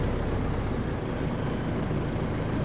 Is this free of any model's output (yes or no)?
yes